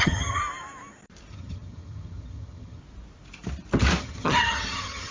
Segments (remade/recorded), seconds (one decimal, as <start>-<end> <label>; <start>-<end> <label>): 0.0-0.4 remade; 0.4-1.3 recorded; 1.3-2.8 remade; 2.8-4.0 recorded; 4.0-5.1 remade